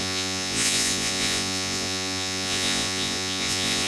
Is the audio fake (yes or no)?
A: yes